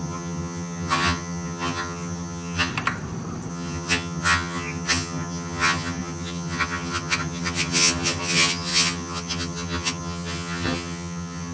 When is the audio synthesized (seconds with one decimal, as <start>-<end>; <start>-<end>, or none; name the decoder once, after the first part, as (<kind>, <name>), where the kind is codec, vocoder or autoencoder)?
0.0-2.7 (vocoder, HiFi-GAN); 3.5-11.5